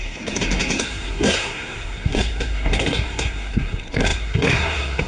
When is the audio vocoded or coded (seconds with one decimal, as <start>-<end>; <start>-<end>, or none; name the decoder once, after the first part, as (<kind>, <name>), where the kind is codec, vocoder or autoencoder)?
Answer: 0.0-5.1 (codec, SNAC)